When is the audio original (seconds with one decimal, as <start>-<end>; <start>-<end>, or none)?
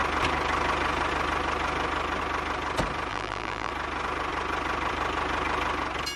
0.0-3.1; 3.7-6.2